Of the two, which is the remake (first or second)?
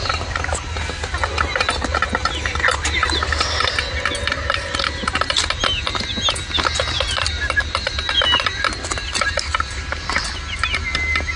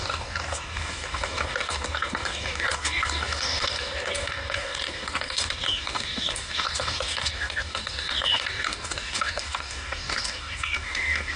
second